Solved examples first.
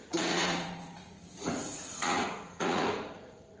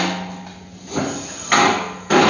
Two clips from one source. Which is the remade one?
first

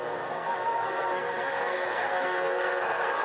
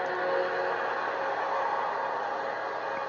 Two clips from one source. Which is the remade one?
first